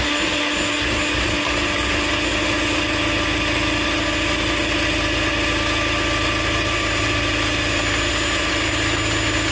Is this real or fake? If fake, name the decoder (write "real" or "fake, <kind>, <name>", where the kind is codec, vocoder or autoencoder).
real